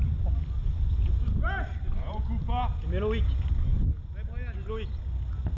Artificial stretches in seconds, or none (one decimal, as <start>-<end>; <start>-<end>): 0.6-2.2